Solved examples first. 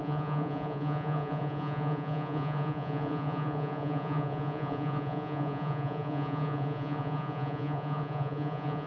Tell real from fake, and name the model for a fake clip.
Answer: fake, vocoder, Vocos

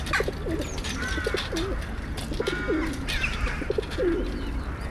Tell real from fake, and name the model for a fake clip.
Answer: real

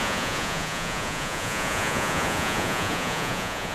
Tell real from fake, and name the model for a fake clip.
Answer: fake, vocoder, Vocos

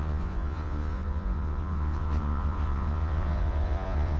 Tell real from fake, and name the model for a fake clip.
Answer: fake, vocoder, Vocos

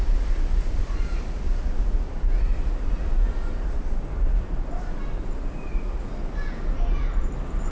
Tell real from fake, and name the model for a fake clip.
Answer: real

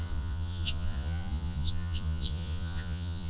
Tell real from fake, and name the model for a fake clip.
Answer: fake, vocoder, Vocos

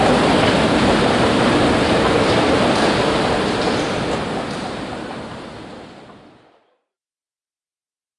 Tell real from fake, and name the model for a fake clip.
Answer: real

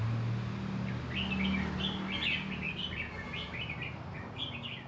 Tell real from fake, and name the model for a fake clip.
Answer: real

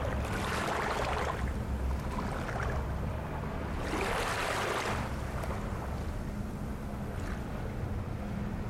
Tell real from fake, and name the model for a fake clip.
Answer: real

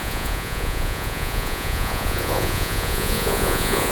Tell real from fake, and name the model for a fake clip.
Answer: fake, vocoder, Vocos